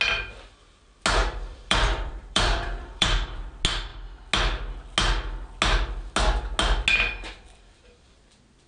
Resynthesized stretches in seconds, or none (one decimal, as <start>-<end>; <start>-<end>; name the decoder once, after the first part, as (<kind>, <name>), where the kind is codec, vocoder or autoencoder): 1.2-3.5 (vocoder, BigVGAN v2)